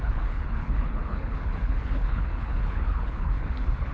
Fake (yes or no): yes